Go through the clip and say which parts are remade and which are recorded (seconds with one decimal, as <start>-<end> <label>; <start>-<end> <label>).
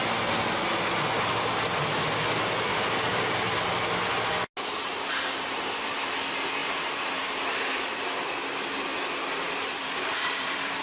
0.0-2.7 recorded; 2.7-3.6 remade; 3.6-6.6 recorded; 6.6-8.0 remade; 8.0-9.3 recorded; 9.3-10.8 remade